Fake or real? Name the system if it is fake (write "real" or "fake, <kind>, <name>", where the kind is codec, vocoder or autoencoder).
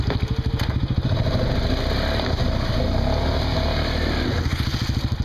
real